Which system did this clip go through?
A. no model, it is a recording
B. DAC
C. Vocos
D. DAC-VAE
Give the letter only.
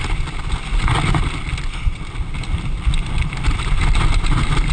A